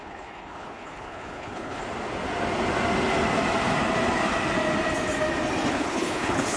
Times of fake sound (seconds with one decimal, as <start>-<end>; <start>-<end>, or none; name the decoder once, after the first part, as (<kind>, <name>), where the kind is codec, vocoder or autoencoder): 0.0-1.8 (codec, HILCodec); 5.7-6.6